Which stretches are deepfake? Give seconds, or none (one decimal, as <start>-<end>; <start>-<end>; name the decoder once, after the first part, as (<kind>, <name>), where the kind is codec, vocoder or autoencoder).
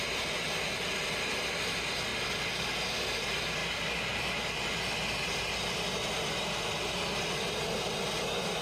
none